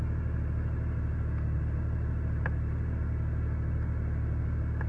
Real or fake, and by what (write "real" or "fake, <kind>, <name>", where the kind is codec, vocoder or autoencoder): real